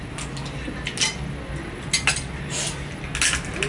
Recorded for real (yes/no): yes